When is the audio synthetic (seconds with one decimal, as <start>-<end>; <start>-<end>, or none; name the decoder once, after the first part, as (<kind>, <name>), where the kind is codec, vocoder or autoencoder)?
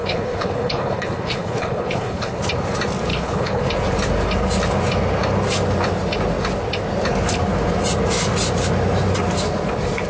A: 0.0-2.4 (codec, HILCodec); 3.1-3.6